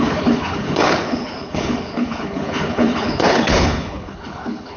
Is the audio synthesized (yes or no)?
yes